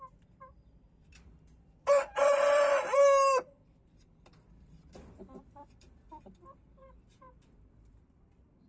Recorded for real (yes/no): no